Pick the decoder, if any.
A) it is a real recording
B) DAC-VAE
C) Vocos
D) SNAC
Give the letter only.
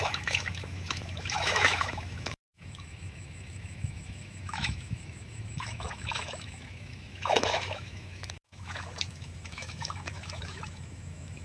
B